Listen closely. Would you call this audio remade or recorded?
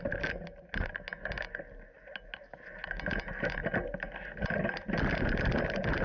recorded